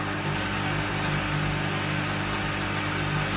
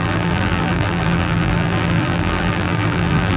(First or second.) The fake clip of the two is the second